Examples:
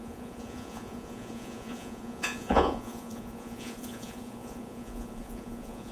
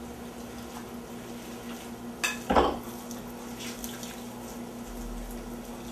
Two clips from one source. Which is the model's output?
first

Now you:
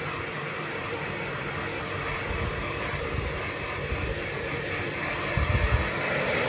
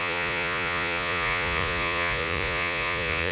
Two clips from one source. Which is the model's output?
second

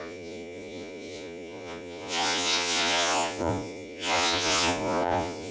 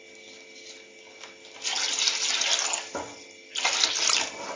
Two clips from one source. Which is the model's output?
first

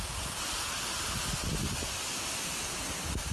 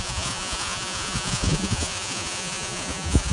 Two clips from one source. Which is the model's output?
second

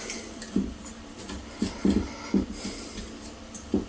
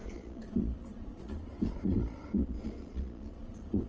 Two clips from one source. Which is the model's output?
second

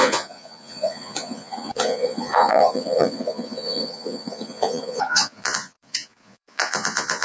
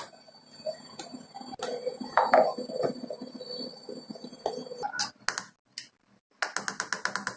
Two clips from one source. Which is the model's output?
first